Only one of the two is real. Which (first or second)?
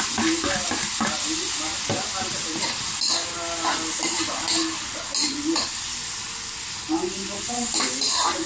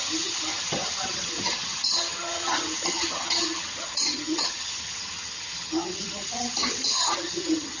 first